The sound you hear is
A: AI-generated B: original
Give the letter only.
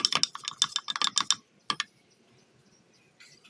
B